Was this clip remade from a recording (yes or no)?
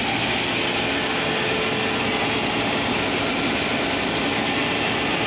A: no